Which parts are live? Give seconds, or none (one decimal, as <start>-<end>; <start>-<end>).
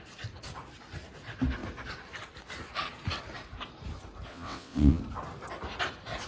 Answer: 0.0-4.3; 5.0-6.3